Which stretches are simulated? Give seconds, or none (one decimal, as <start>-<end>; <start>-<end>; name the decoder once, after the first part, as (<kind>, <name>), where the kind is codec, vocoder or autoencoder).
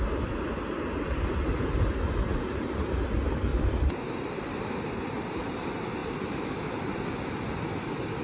2.3-2.9 (vocoder, BigVGAN v2); 3.5-4.1; 6.0-6.8